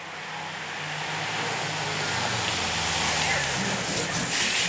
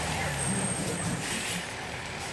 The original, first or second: first